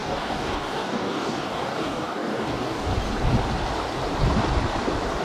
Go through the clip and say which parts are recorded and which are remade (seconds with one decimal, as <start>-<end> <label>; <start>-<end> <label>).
0.0-2.9 remade; 2.9-5.2 recorded